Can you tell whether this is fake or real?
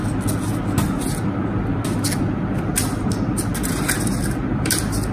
real